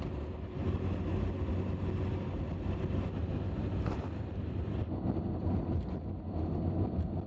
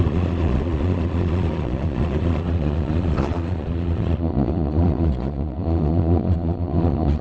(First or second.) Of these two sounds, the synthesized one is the second